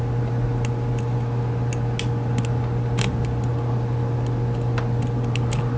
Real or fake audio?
real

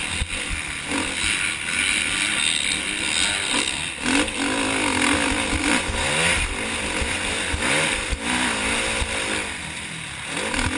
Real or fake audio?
real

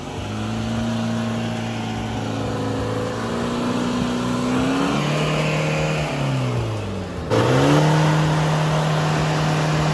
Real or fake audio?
real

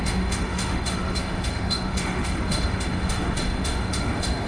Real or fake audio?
fake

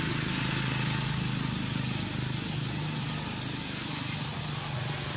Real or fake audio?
real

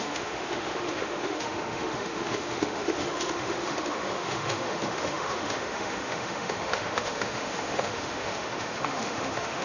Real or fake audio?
fake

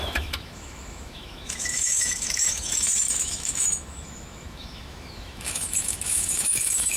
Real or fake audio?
fake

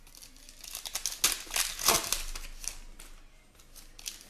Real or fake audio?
real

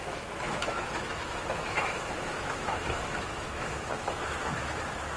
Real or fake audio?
fake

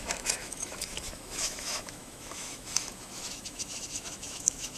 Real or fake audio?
fake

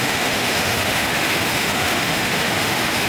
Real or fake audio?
fake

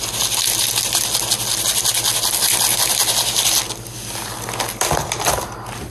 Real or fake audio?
real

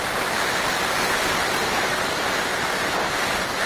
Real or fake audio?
real